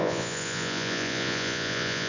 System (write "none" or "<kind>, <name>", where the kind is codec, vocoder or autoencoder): vocoder, Vocos